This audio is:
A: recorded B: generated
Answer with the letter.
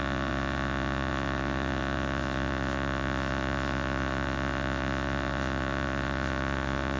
B